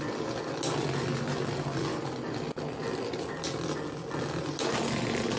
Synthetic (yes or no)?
no